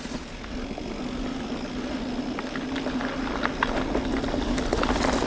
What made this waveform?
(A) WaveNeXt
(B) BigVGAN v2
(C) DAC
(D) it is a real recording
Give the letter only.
D